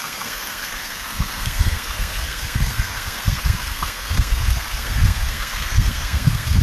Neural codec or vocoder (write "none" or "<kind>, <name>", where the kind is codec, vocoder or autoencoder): codec, SNAC